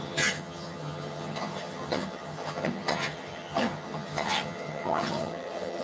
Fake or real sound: fake